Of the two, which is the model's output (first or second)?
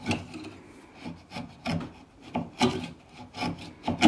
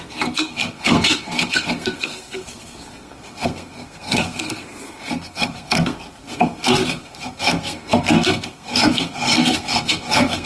second